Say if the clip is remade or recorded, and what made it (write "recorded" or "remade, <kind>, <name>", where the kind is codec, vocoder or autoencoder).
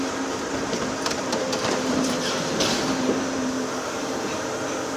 remade, vocoder, BigVGAN v2